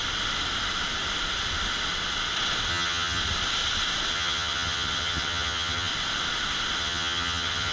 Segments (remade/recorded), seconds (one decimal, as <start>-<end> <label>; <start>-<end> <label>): 0.0-2.7 recorded; 2.7-3.2 remade; 3.2-4.1 recorded; 4.1-5.9 remade; 5.9-6.8 recorded; 6.8-7.7 remade